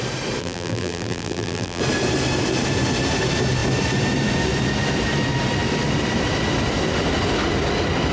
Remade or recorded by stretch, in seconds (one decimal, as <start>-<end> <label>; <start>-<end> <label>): 0.0-0.4 recorded; 0.4-1.8 remade; 1.8-8.1 recorded